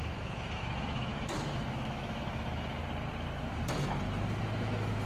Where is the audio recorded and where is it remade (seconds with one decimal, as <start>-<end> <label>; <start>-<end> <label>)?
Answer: 0.0-2.8 remade; 2.8-4.4 recorded; 4.4-5.1 remade